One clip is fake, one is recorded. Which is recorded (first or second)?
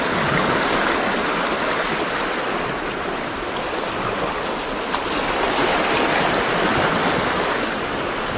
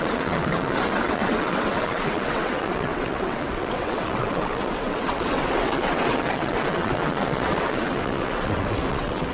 first